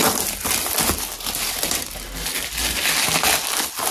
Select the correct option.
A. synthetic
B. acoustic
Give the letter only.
B